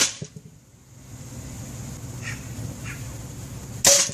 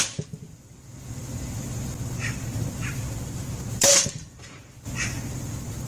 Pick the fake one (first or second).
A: second